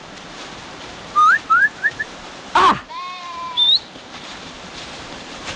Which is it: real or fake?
fake